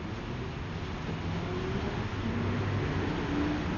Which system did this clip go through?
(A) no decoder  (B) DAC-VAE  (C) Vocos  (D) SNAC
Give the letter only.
A